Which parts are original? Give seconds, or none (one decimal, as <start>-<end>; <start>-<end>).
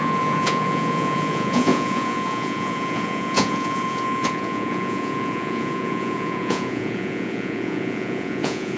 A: none